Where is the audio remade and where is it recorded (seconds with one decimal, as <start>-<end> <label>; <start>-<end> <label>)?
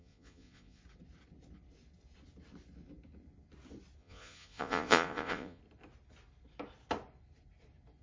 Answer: 0.0-0.8 remade; 0.8-4.0 recorded; 4.0-5.6 remade; 5.6-8.0 recorded